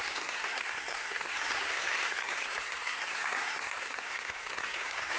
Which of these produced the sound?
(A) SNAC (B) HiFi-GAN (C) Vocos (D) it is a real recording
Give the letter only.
A